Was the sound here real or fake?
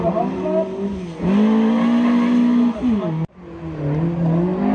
real